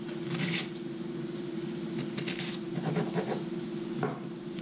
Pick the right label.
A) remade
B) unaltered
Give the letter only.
B